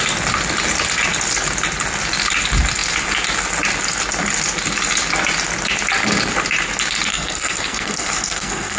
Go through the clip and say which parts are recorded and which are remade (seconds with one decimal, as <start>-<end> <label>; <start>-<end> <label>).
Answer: 0.0-7.1 recorded; 7.1-8.8 remade